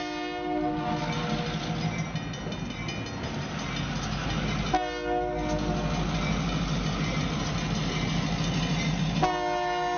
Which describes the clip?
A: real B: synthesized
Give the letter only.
A